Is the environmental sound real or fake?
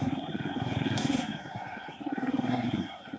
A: fake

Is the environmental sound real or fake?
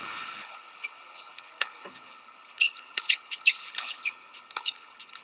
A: fake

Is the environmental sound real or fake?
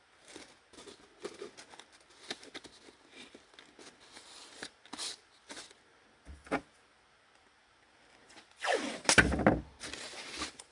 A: real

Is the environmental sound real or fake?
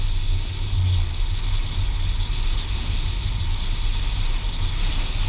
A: real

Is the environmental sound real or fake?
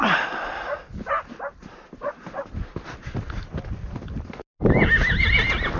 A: real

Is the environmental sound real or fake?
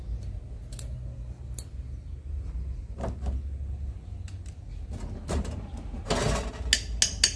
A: real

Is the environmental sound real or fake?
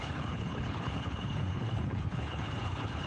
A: fake